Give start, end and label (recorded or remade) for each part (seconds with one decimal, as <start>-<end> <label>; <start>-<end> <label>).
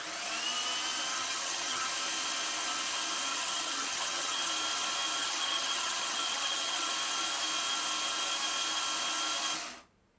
0.0-1.1 recorded; 1.1-1.9 remade; 1.9-3.3 recorded; 3.3-4.5 remade; 4.5-5.2 recorded; 5.2-6.9 remade; 6.9-10.2 recorded